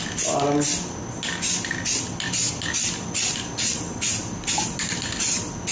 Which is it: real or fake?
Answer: real